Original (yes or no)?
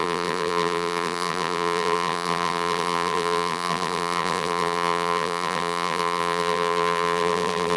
no